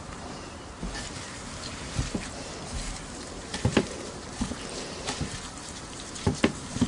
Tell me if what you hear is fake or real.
fake